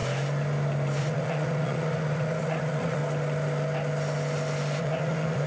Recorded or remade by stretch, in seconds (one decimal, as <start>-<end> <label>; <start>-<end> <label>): 0.0-1.0 recorded; 1.0-3.0 remade; 3.0-4.8 recorded; 4.8-5.5 remade